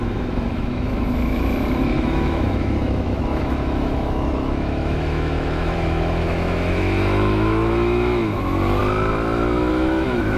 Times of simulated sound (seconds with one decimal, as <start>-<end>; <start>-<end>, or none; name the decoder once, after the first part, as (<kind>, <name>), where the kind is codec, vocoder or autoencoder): 0.0-8.8 (autoencoder, DAC-VAE); 9.7-10.4